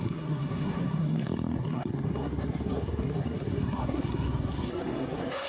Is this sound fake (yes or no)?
yes